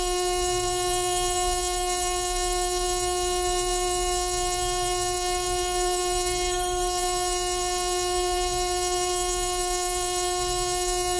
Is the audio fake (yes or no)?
yes